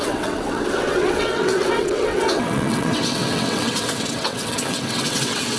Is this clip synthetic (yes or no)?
yes